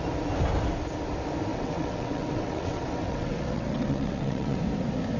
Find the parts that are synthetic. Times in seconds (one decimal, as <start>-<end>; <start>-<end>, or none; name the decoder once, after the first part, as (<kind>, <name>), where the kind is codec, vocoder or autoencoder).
1.5-4.6 (vocoder, WaveNeXt)